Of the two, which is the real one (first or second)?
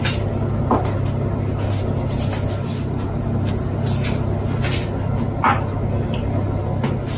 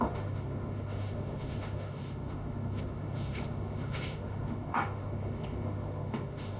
first